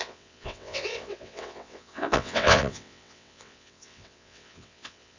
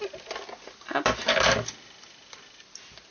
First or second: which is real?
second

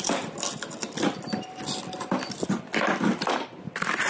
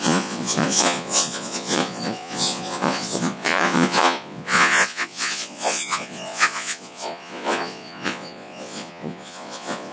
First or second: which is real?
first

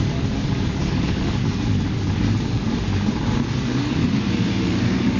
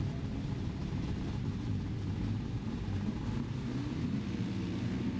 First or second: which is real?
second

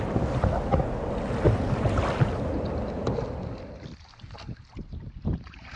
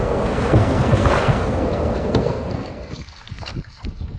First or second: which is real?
first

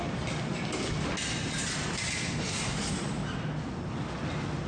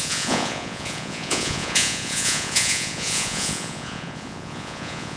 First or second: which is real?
first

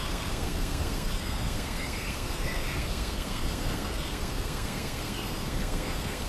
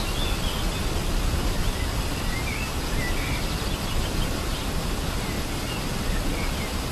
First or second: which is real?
second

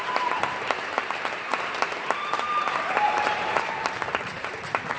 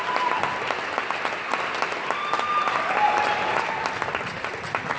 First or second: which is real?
second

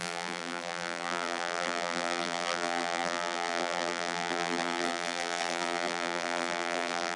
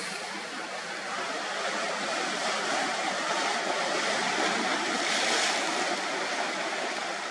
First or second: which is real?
second